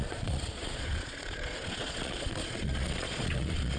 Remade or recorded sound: remade